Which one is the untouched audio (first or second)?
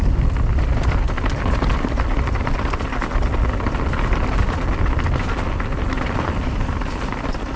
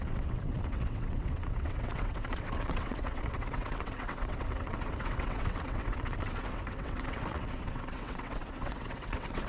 first